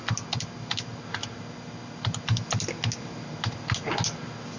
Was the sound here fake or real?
real